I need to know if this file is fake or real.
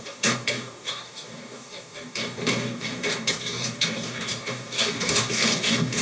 fake